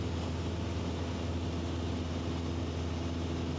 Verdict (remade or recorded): recorded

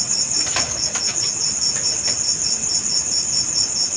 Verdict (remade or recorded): recorded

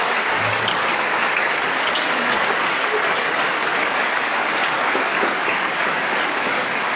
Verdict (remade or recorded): remade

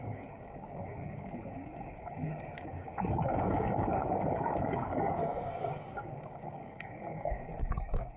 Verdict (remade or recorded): remade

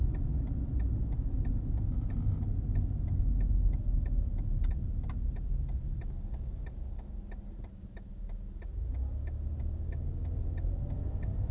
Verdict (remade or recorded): recorded